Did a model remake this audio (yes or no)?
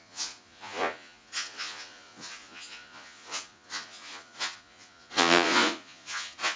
yes